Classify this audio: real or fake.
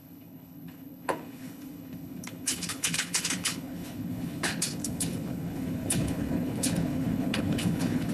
fake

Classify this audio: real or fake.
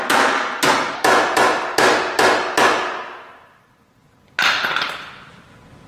real